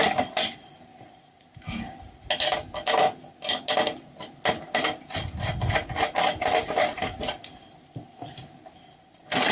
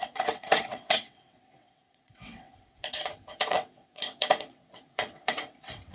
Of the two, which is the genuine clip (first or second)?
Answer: first